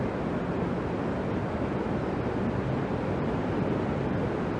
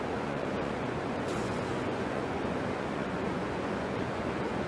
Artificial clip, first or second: second